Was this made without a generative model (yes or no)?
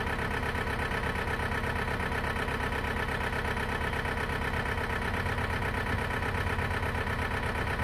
yes